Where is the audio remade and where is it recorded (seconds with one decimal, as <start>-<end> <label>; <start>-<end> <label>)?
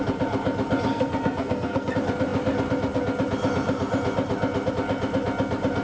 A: 0.0-0.9 recorded; 0.9-1.9 remade; 1.9-5.8 recorded